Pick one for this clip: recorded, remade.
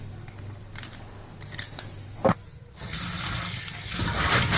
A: recorded